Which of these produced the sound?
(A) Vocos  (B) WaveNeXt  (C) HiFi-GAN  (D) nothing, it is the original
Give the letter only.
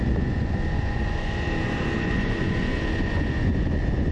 A